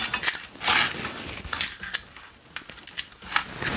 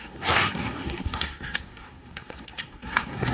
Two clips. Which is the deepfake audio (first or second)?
second